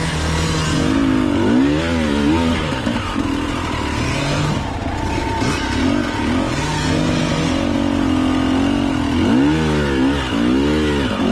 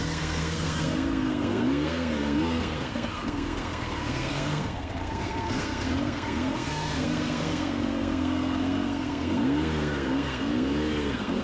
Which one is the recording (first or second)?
first